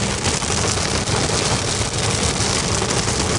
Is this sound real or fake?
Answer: real